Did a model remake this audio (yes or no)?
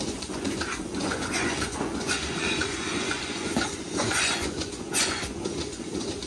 yes